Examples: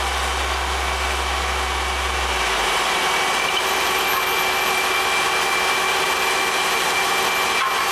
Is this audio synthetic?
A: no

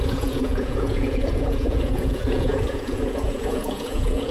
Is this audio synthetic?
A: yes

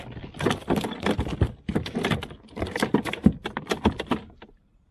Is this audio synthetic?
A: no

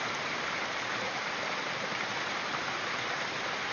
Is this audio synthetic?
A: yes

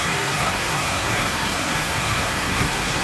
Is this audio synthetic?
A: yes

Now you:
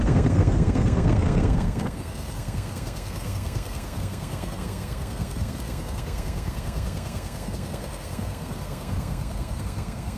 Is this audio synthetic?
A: yes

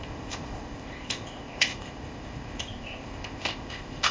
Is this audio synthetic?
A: yes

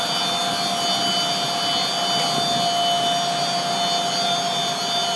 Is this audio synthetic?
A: no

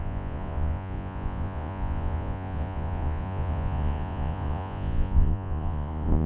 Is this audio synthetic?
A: yes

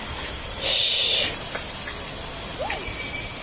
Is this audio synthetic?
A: no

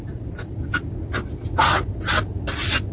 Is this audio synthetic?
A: no